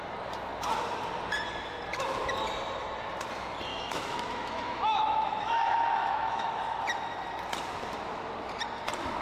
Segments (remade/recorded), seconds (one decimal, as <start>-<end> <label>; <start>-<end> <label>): 0.0-3.7 recorded; 3.7-6.6 remade; 6.6-9.2 recorded